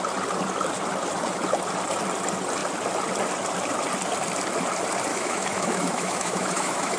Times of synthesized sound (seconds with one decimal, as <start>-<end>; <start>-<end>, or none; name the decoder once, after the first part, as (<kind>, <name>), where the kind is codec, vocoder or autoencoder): 5.1-7.0 (autoencoder, DAC-VAE)